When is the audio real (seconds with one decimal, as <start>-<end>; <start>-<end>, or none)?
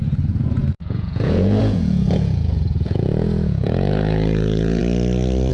4.8-5.5